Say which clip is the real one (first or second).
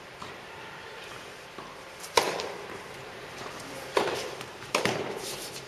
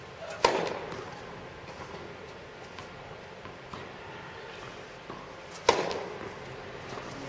second